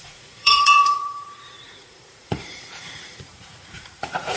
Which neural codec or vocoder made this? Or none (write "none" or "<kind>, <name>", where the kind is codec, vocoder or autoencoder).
vocoder, Vocos